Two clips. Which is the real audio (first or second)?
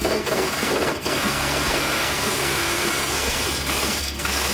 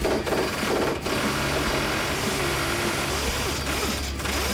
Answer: second